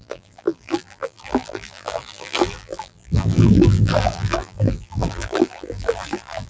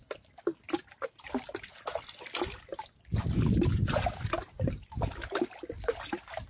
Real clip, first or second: second